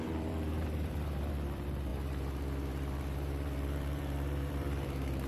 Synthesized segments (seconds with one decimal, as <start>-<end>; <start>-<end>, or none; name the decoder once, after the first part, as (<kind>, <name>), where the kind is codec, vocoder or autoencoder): 0.0-5.3 (vocoder, BigVGAN v2)